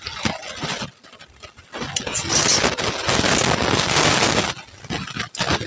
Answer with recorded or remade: recorded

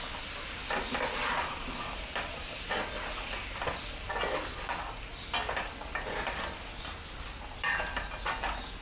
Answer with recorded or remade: recorded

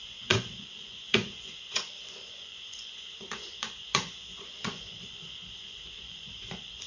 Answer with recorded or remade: remade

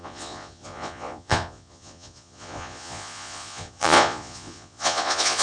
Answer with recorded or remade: remade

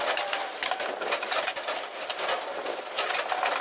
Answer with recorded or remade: recorded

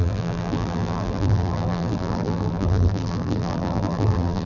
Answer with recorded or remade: remade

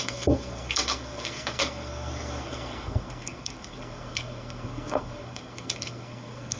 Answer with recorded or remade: remade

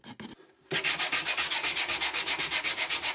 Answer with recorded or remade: recorded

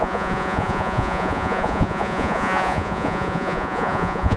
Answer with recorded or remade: remade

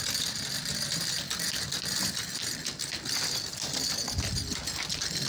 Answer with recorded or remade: recorded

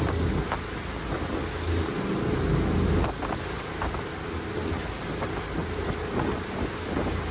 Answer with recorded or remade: recorded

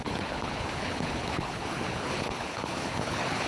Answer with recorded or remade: remade